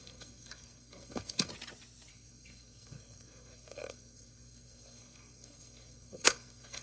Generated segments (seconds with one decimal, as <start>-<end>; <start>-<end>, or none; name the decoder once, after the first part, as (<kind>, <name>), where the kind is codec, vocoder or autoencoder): 0.0-1.5 (codec, SNAC); 2.1-6.8